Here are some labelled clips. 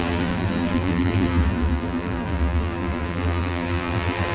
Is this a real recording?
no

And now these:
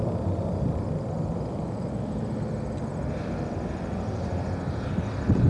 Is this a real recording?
yes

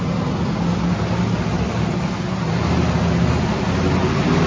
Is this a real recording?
yes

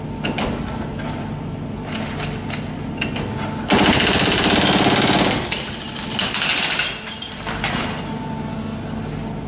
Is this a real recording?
yes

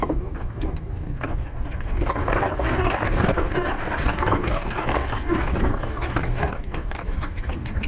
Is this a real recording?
no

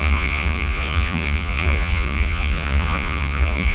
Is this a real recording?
no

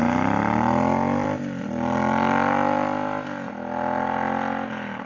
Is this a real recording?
yes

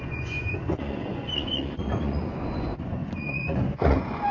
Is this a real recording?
no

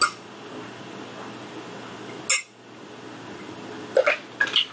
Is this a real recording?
yes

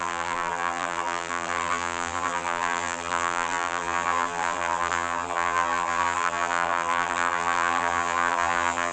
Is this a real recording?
no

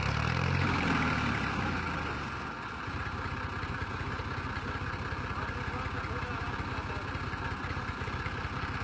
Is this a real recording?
yes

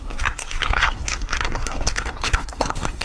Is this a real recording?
no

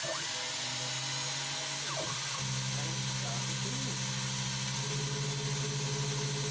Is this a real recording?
yes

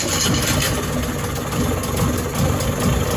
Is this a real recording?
yes